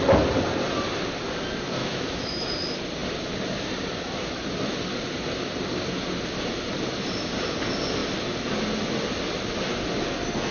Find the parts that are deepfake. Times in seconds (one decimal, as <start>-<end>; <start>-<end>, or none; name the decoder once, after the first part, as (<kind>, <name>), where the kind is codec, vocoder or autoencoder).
1.8-2.5 (autoencoder, DAC-VAE)